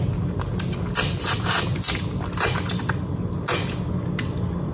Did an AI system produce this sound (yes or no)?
no